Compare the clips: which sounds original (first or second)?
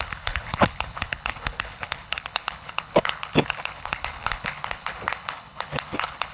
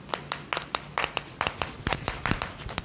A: second